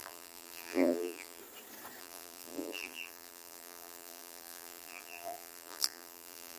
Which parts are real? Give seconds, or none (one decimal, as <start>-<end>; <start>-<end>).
1.4-2.0